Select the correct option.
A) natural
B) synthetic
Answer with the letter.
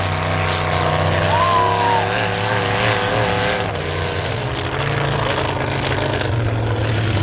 A